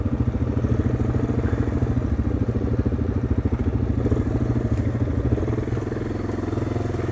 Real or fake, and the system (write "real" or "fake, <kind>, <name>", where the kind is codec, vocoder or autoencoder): real